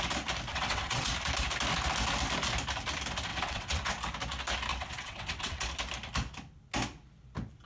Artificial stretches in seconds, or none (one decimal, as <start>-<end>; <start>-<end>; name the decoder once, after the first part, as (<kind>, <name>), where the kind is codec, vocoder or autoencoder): 0.5-1.1 (vocoder, WaveNeXt); 3.3-3.9; 4.7-5.7